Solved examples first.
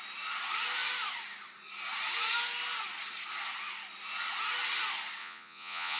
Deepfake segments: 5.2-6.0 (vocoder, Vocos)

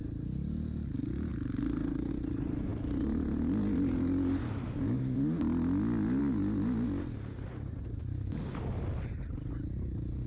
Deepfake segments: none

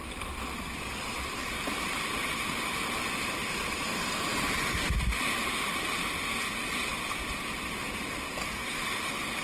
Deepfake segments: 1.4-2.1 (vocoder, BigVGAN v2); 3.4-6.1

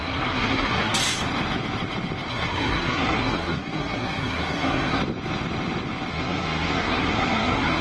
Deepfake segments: 0.0-1.0 (codec, SNAC); 2.3-5.0; 6.1-7.8

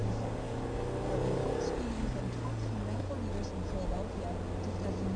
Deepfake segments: 0.0-3.1 (codec, DAC)